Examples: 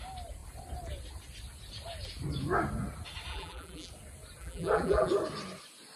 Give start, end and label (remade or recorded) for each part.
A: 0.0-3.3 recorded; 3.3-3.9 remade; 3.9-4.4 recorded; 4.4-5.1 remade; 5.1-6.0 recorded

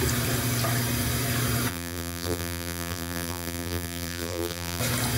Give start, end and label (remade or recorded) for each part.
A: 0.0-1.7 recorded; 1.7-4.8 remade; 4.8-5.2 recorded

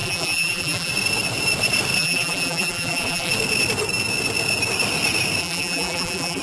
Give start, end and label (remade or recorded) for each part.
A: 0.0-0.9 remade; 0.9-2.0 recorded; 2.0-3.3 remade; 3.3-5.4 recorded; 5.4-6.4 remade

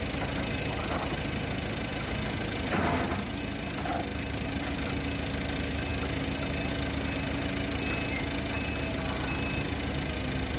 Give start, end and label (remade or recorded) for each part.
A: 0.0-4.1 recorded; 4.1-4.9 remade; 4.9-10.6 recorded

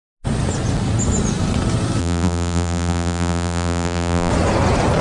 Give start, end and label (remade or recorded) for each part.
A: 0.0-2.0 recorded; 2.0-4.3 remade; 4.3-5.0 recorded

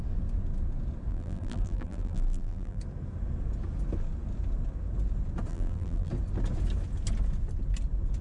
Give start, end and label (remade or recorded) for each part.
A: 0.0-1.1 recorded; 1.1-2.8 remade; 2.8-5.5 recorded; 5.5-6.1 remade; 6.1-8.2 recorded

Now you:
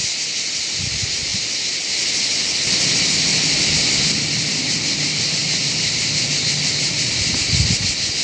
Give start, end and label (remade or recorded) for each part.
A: 0.0-0.8 remade; 0.8-1.3 recorded; 1.3-3.0 remade; 3.0-5.4 recorded; 5.4-6.0 remade; 6.0-8.2 recorded

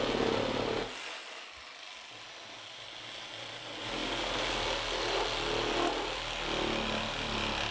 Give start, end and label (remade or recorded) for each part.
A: 0.0-7.7 recorded